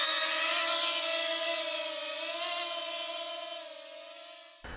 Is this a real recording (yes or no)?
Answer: yes